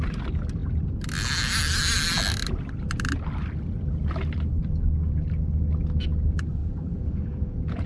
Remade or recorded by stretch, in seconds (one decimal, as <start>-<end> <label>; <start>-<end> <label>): 0.0-6.6 recorded; 6.6-7.9 remade